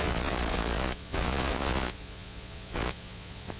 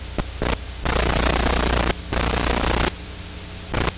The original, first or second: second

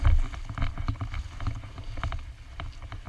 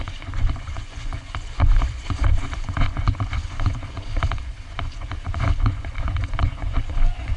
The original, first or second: first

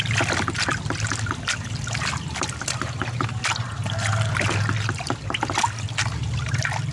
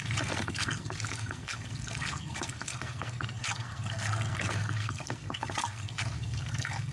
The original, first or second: first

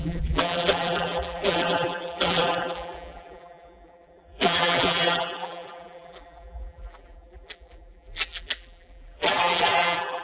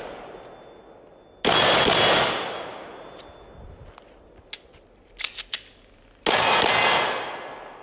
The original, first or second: second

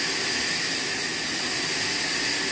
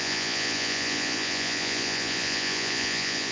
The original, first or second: first